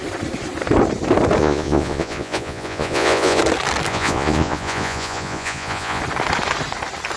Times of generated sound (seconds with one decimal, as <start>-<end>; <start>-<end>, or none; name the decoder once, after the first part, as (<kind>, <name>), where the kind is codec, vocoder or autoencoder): 1.4-3.4 (vocoder, Vocos); 3.9-6.0